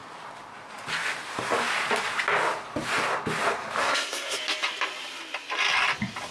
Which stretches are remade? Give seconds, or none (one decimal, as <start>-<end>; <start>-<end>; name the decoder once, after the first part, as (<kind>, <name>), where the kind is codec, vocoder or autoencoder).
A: 3.8-4.4 (codec, SNAC)